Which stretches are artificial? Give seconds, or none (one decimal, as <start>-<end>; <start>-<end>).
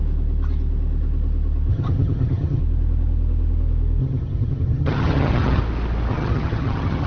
1.7-2.6; 4.0-5.6; 6.1-7.1